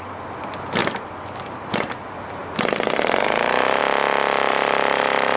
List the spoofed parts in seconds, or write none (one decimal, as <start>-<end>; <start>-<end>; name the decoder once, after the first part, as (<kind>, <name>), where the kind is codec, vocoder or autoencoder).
2.4-3.8 (vocoder, BigVGAN v2); 4.5-5.4